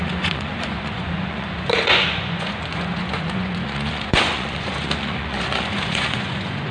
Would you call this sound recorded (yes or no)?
no